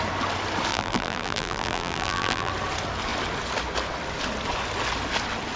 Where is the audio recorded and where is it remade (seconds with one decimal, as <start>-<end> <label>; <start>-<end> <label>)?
0.0-0.7 recorded; 0.7-2.5 remade; 2.5-5.6 recorded